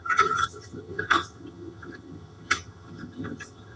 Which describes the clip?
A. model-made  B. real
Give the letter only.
A